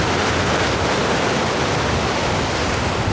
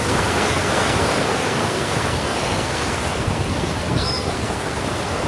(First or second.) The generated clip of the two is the second